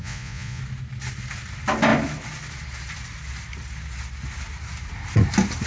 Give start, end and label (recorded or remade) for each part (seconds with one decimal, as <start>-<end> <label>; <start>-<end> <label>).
0.0-0.6 remade; 0.6-5.7 recorded